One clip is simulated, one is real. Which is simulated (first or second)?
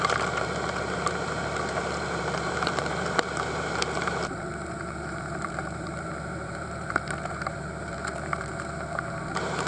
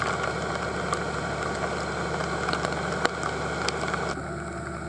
first